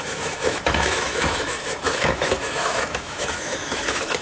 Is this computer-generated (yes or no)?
yes